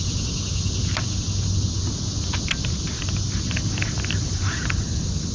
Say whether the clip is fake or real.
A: real